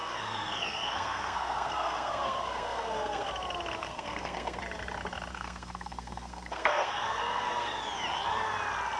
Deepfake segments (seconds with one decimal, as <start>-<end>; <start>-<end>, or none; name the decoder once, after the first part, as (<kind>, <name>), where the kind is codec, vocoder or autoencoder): 0.0-3.3 (codec, SNAC); 3.8-4.6; 5.3-7.8